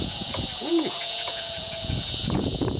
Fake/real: fake